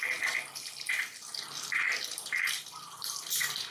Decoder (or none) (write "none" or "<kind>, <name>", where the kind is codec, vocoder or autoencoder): none